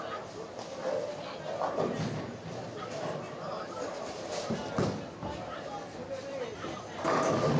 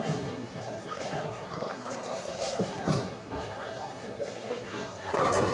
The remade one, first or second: second